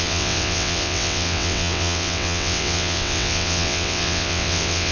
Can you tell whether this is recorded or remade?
remade